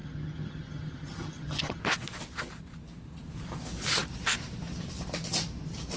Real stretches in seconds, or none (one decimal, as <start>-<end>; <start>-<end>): 1.8-6.0